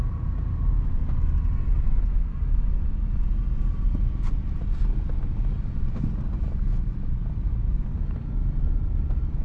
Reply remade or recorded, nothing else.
recorded